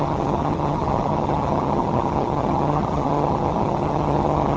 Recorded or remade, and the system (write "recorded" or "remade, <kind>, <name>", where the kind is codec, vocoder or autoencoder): remade, vocoder, HiFi-GAN